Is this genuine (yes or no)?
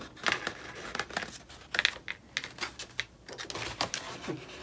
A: yes